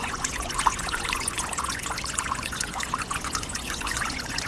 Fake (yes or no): yes